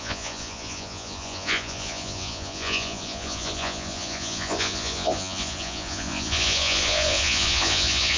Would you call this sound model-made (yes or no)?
yes